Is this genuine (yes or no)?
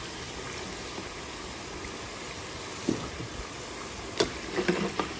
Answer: yes